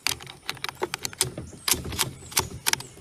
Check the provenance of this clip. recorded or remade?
recorded